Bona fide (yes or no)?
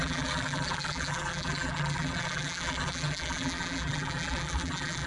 no